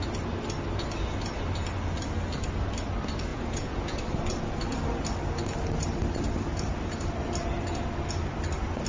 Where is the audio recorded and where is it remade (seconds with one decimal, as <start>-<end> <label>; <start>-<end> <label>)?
0.0-3.3 recorded; 3.3-4.0 remade; 4.0-8.9 recorded